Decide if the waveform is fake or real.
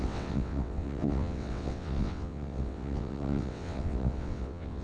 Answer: fake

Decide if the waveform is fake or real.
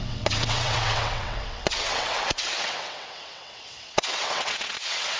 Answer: fake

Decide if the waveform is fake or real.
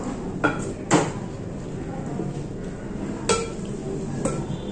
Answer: real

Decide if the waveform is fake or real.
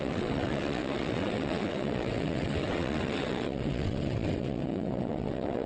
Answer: fake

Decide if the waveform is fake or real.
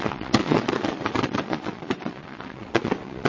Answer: fake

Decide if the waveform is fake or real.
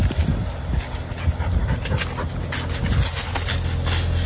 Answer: real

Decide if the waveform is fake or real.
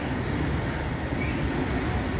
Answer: real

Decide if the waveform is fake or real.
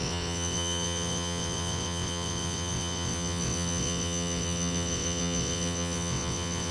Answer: fake